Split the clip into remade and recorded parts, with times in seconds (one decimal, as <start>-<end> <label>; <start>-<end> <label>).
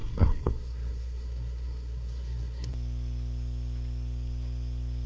0.0-2.7 remade; 2.7-5.1 recorded